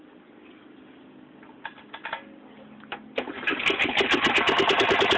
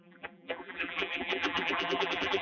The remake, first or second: second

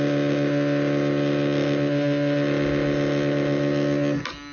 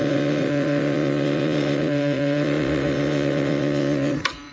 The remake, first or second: second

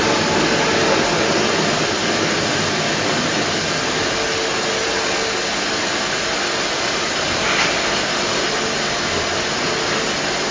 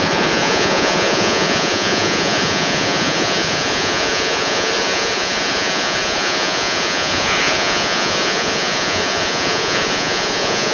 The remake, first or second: second